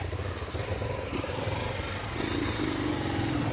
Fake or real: real